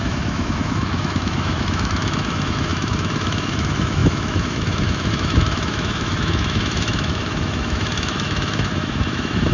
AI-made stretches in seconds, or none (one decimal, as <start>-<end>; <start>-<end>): 0.0-9.5